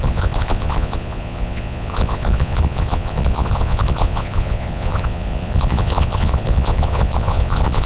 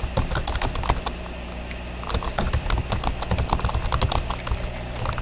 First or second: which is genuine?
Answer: second